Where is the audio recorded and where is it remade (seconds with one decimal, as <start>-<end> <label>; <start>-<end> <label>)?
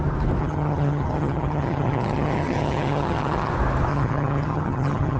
0.0-0.4 recorded; 0.4-3.5 remade; 3.5-3.9 recorded; 3.9-5.2 remade